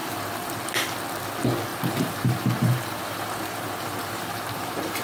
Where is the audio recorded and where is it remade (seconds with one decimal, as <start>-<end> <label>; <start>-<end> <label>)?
0.0-1.7 recorded; 1.7-5.0 remade